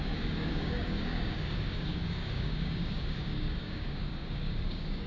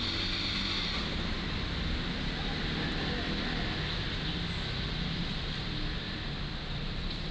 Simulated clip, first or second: first